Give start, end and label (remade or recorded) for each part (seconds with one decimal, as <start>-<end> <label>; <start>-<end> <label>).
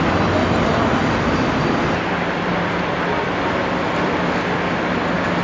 0.0-5.4 recorded